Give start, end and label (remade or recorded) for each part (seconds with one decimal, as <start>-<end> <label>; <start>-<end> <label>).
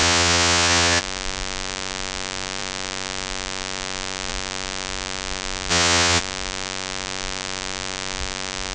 0.0-1.0 remade; 1.0-5.7 recorded; 5.7-6.2 remade; 6.2-8.7 recorded